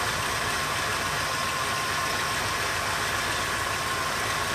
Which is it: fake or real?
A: real